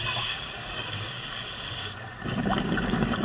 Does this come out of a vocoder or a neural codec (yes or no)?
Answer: yes